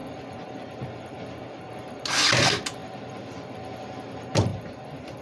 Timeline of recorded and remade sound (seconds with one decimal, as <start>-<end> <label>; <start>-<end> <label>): 0.0-2.0 remade; 2.0-2.8 recorded; 2.8-3.6 remade; 3.6-4.5 recorded; 4.5-5.2 remade